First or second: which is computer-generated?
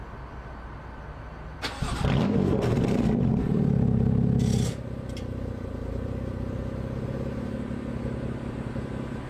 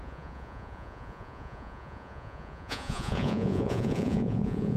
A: second